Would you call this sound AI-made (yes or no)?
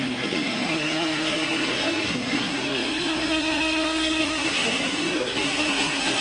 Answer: yes